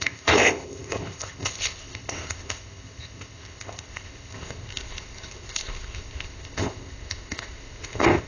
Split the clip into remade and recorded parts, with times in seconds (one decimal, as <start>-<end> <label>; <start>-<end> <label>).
0.0-8.3 remade

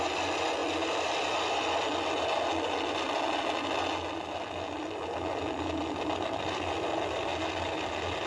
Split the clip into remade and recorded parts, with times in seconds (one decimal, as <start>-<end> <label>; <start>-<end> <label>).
0.0-8.3 recorded

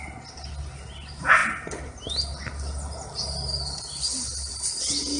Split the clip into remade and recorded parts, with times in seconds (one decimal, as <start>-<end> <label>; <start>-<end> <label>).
0.0-5.2 recorded

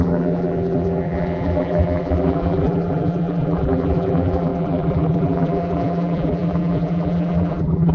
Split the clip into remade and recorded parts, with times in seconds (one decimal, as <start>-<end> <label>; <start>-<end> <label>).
0.0-7.9 remade

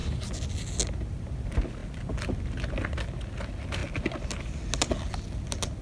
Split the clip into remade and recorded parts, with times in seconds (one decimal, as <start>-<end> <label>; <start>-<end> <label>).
0.0-5.8 recorded

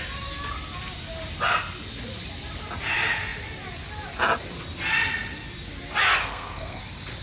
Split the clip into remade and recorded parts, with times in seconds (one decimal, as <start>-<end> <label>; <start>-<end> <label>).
0.0-6.2 recorded; 6.2-6.8 remade; 6.8-7.2 recorded

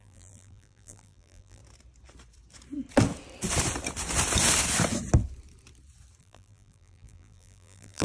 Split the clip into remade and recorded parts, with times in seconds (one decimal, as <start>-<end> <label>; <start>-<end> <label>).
0.0-1.6 remade; 1.6-6.2 recorded; 6.2-8.0 remade